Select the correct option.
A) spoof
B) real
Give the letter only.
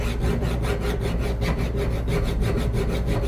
B